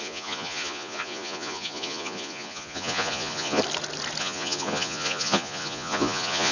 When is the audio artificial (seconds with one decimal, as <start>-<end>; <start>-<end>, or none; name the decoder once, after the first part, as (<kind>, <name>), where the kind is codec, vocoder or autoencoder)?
0.0-3.6 (vocoder, Vocos); 4.2-6.5